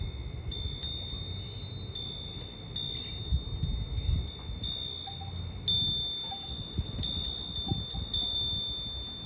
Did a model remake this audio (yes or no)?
no